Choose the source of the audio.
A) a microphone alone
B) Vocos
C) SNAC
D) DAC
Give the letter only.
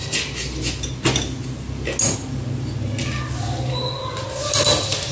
A